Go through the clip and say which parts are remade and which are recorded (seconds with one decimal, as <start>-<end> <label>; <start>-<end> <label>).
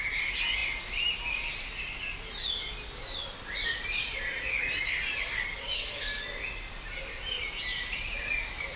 0.0-8.8 recorded